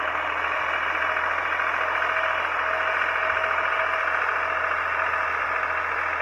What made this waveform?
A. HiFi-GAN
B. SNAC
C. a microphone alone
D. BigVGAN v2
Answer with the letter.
C